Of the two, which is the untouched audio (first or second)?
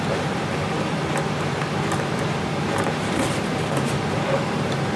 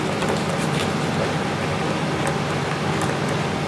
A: second